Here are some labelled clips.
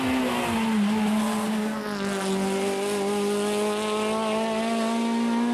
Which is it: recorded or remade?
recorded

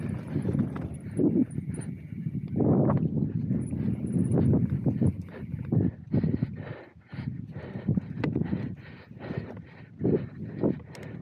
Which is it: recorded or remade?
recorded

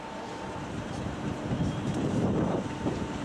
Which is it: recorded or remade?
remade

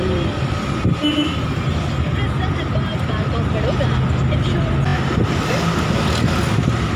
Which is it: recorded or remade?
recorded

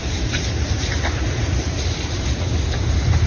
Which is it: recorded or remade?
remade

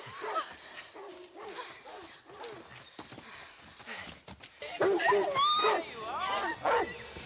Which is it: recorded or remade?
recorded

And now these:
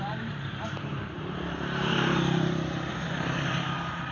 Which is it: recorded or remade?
remade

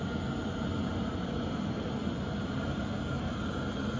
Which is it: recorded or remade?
recorded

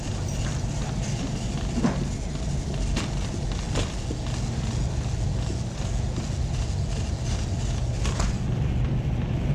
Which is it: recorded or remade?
recorded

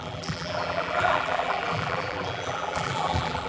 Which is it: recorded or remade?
remade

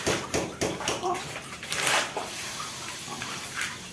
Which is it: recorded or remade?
remade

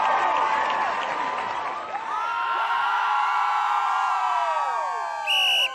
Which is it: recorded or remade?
recorded